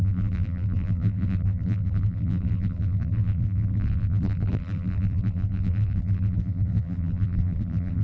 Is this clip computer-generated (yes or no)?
yes